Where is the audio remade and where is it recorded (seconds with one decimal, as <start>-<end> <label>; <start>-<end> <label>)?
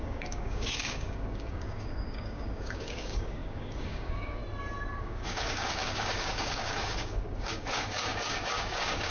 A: 0.0-4.4 remade; 4.4-5.0 recorded; 5.0-9.1 remade